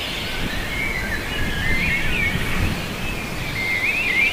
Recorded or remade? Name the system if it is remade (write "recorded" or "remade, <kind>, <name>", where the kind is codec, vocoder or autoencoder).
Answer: recorded